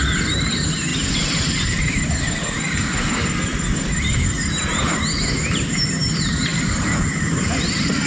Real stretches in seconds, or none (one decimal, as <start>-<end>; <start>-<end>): 0.0-8.1